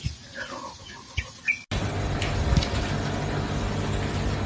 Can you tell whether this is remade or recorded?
recorded